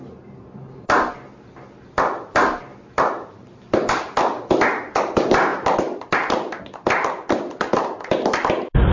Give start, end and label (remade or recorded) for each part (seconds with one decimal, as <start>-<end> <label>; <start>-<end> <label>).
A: 0.0-5.5 recorded; 5.5-6.0 remade; 6.0-8.9 recorded